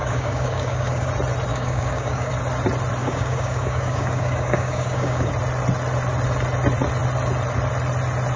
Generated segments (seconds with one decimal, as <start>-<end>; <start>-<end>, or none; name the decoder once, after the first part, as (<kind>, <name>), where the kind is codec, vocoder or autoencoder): 0.0-1.1 (codec, DAC); 1.5-2.3; 3.0-5.3